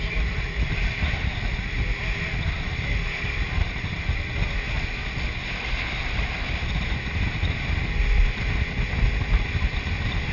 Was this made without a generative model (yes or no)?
yes